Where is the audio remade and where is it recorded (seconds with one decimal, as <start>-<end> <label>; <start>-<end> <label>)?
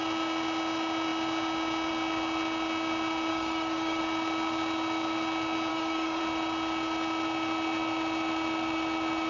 0.0-3.3 recorded; 3.3-4.0 remade; 4.0-5.7 recorded; 5.7-6.2 remade; 6.2-9.3 recorded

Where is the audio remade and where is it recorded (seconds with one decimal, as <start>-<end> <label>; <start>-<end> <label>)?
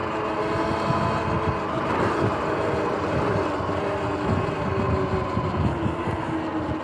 0.0-6.8 recorded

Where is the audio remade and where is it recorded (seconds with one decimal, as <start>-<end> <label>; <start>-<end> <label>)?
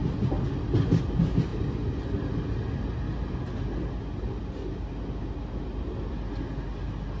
0.0-7.2 recorded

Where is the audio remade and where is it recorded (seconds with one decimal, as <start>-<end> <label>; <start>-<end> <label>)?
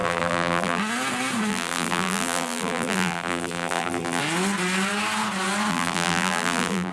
0.0-0.8 remade; 0.8-1.5 recorded; 1.5-4.2 remade; 4.2-5.7 recorded; 5.7-6.9 remade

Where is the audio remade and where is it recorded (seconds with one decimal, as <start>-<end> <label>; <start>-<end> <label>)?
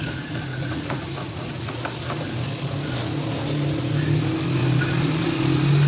0.0-0.5 recorded; 0.5-1.8 remade; 1.8-5.9 recorded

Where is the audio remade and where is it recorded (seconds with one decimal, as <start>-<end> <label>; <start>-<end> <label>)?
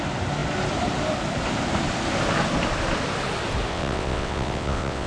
0.0-3.7 recorded; 3.7-5.1 remade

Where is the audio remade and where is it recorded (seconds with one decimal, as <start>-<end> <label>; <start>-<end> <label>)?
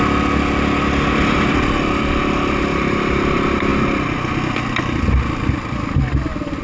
0.0-6.6 recorded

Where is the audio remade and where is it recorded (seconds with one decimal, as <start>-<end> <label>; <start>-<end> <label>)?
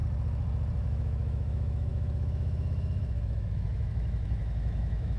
0.0-0.8 recorded; 0.8-5.2 remade